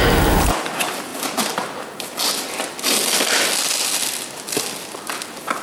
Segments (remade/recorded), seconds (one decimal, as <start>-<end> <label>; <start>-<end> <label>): 0.0-5.6 recorded